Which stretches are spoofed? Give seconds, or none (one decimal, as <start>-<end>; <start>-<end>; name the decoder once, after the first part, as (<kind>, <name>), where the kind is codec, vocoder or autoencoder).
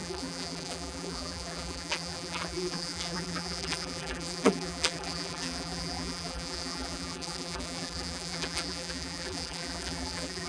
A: 0.0-10.5 (vocoder, BigVGAN v2)